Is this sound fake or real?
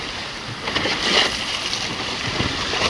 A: real